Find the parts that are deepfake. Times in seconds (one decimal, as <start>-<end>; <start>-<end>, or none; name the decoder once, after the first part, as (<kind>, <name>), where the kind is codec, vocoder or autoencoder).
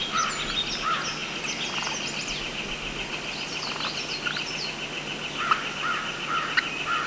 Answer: none